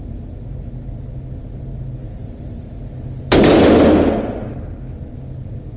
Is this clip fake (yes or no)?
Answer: no